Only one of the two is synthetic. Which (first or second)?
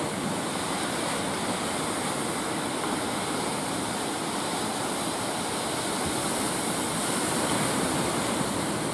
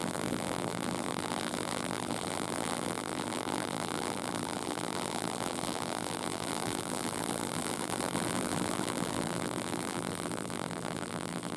second